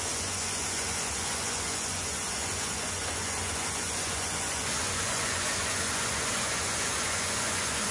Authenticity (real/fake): fake